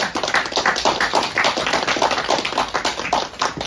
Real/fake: real